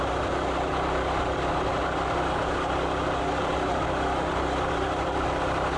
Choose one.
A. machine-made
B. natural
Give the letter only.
B